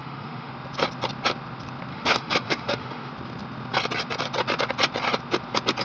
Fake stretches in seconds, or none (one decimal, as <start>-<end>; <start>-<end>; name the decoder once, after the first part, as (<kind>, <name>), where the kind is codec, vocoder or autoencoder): 0.0-0.5 (autoencoder, DAC-VAE); 1.9-3.1